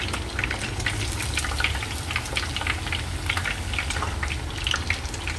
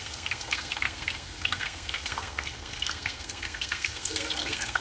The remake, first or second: second